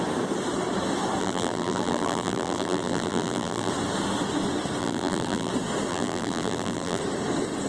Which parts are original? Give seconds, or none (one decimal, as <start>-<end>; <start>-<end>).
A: 0.0-1.2; 3.7-4.8; 5.5-5.9; 7.0-7.7